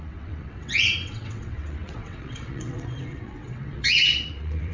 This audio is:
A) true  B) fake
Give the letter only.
B